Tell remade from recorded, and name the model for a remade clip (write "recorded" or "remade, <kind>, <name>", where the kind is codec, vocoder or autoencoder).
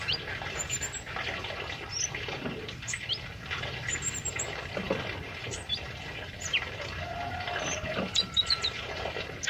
remade, vocoder, BigVGAN v2